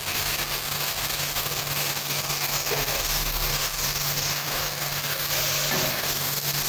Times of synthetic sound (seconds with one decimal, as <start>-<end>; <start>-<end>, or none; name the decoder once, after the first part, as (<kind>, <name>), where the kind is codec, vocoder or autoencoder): 0.0-5.3 (codec, DAC); 5.9-6.7